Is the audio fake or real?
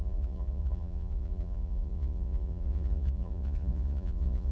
fake